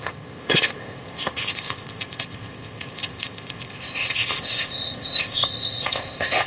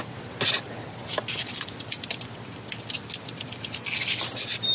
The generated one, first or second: first